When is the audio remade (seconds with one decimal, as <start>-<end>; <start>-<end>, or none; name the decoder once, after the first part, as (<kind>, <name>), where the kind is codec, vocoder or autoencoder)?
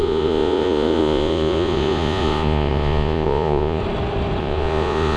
0.0-3.8 (vocoder, Vocos); 4.4-5.2